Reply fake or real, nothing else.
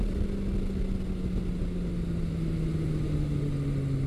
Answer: real